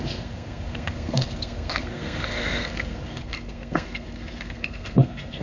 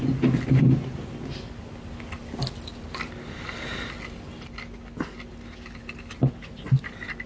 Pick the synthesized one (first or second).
first